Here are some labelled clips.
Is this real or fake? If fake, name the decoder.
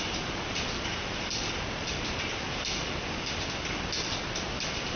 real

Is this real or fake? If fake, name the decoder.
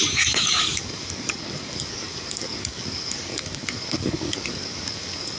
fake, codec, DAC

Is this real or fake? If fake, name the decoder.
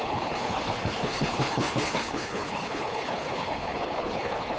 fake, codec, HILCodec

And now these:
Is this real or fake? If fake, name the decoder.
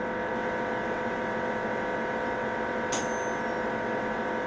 real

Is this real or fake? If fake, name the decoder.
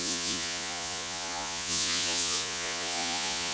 fake, vocoder, Vocos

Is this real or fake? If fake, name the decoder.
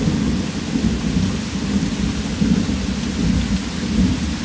real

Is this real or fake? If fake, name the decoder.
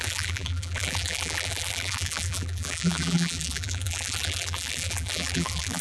fake, vocoder, BigVGAN v2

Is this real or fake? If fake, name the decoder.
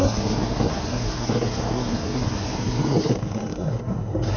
fake, codec, SNAC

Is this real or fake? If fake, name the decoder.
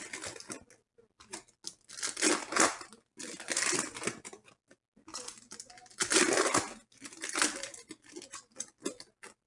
real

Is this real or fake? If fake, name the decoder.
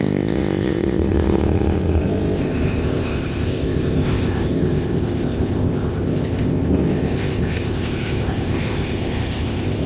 fake, codec, ZipCodec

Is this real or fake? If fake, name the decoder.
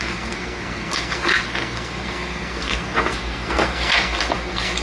fake, codec, SNAC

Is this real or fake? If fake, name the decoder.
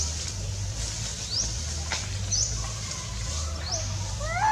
real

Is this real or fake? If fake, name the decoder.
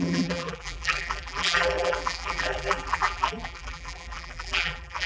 fake, vocoder, BigVGAN v2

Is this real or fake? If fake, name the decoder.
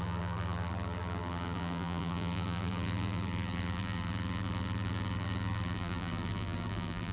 fake, vocoder, BigVGAN v2